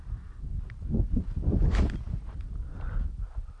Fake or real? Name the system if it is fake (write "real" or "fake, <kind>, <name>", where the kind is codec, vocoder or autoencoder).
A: real